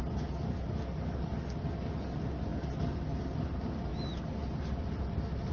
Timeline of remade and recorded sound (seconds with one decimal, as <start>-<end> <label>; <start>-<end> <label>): 0.0-5.5 recorded